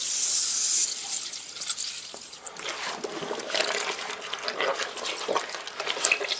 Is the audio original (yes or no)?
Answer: yes